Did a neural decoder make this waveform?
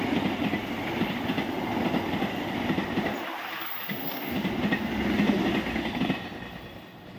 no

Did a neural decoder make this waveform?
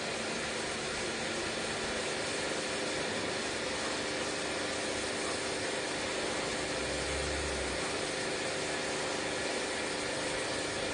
no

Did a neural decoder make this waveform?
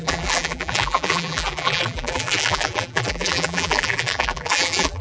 yes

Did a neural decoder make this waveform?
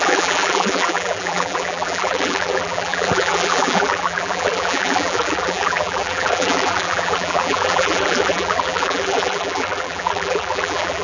yes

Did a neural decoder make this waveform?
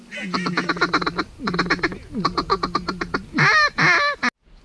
no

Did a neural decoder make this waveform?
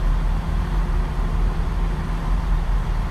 yes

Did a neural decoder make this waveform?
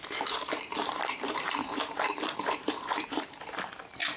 yes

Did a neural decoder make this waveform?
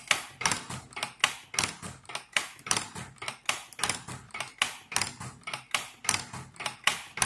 no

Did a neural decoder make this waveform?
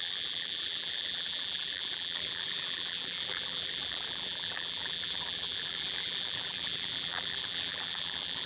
yes